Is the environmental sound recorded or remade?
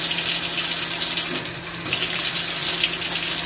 recorded